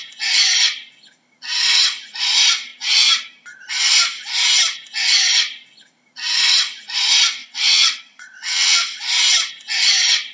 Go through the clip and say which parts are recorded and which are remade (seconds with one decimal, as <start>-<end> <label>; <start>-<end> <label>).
0.0-7.4 recorded; 7.4-9.0 remade; 9.0-10.3 recorded